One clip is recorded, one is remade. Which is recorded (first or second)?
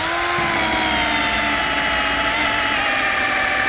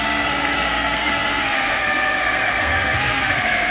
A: first